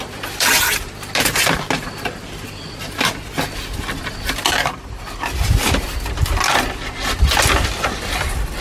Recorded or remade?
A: recorded